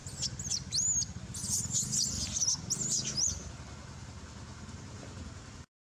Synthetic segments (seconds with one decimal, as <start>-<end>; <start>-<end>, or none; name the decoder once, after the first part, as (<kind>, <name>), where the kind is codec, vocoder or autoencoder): none